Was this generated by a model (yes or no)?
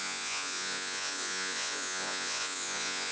yes